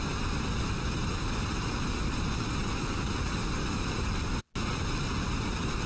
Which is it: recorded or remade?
recorded